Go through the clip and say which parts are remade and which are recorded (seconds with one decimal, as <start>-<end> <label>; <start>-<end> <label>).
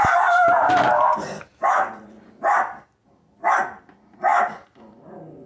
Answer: 0.0-5.5 recorded